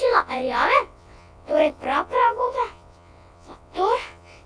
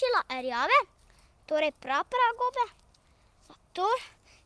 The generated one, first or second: first